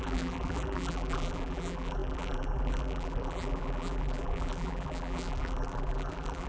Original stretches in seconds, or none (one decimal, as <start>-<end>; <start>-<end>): none